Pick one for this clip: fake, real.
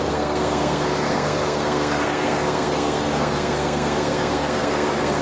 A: fake